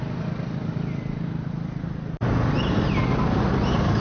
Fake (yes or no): no